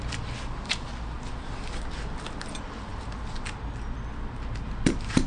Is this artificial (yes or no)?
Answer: no